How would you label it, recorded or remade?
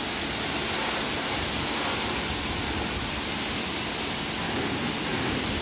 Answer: recorded